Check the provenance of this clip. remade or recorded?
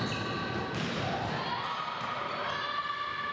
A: recorded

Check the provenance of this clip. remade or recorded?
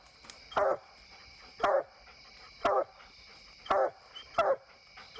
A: recorded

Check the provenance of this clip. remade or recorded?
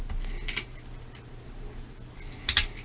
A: recorded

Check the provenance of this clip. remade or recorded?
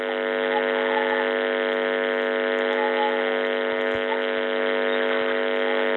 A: recorded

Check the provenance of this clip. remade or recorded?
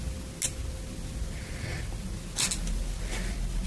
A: recorded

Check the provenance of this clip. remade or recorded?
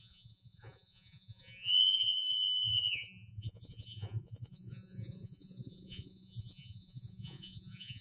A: remade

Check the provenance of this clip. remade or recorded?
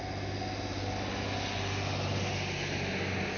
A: recorded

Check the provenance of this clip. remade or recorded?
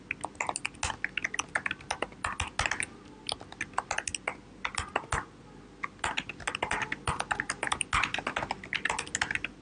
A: recorded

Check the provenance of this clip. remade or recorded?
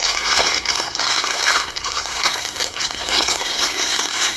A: remade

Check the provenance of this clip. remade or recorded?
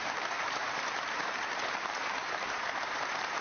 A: remade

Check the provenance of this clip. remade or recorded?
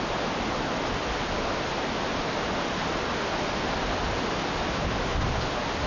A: recorded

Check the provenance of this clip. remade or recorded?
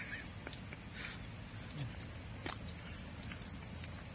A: recorded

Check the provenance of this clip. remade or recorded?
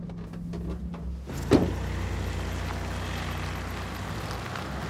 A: recorded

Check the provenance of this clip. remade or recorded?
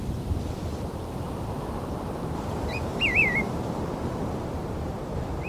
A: remade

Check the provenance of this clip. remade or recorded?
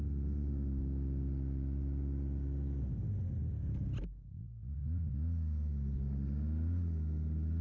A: recorded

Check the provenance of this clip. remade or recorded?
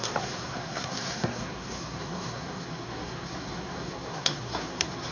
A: remade